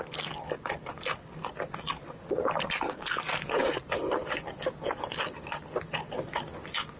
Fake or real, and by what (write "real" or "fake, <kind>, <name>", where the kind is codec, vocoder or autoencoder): real